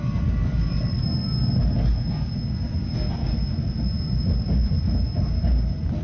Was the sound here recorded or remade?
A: recorded